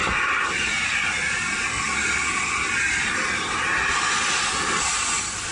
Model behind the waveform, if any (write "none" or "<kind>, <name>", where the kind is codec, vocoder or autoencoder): none